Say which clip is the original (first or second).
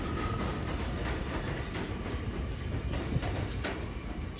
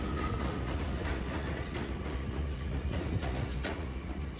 first